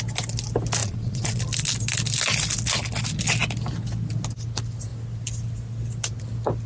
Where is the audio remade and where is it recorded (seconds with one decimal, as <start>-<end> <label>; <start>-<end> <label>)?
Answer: 0.0-0.8 recorded; 0.8-1.4 remade; 1.4-6.7 recorded